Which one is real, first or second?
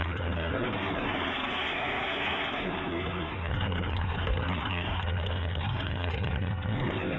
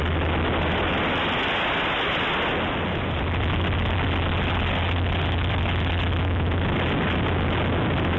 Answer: second